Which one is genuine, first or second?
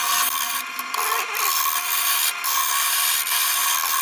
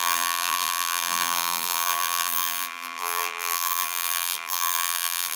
first